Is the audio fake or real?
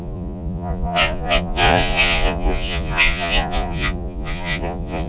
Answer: fake